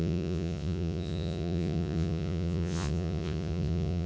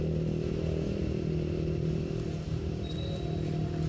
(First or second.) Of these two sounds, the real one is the second